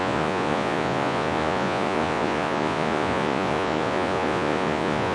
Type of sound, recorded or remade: remade